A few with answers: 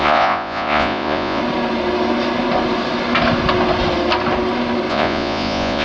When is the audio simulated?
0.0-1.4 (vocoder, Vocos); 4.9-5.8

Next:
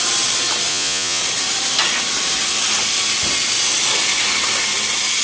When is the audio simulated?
0.7-1.2 (vocoder, Vocos)

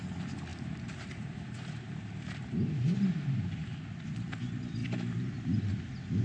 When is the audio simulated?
0.5-3.1 (vocoder, BigVGAN v2); 4.8-5.4

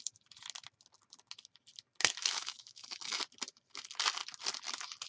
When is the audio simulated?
2.2-3.2 (autoencoder, DAC-VAE)

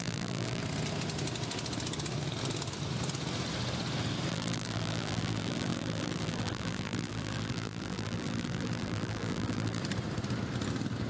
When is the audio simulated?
0.0-0.6 (vocoder, BigVGAN v2); 4.3-9.8

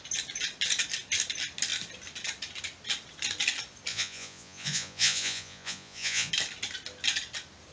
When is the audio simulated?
3.9-6.3 (vocoder, Vocos)

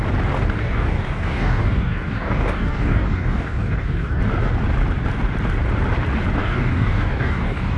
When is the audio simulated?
0.6-4.2 (codec, DAC); 6.4-7.8